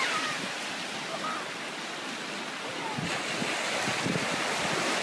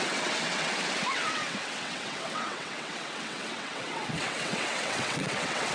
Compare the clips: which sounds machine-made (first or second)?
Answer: second